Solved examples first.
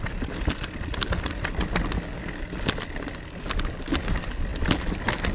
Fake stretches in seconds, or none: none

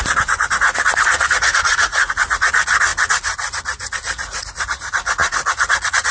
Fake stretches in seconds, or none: 0.0-2.9 (vocoder, Vocos); 3.6-6.1

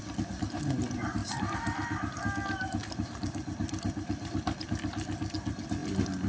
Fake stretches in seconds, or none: 1.2-2.1 (vocoder, BigVGAN v2); 2.8-4.7

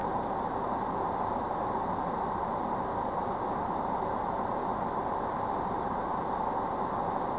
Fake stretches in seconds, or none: 4.7-6.4 (vocoder, BigVGAN v2)

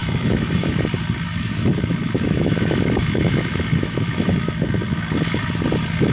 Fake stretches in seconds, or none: 0.0-0.8 (autoencoder, DAC-VAE); 1.3-5.0

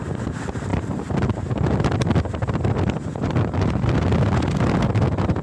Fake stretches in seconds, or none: none